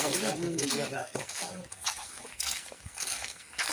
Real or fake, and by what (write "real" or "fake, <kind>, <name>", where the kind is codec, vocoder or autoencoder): fake, codec, SNAC